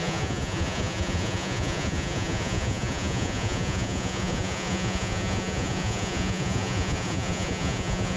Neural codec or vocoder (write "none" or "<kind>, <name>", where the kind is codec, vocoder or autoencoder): vocoder, Vocos